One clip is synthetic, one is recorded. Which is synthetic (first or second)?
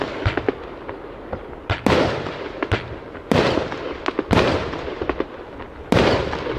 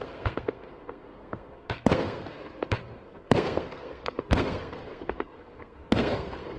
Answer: second